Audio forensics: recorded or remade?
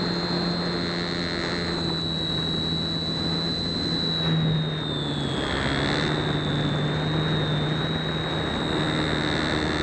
recorded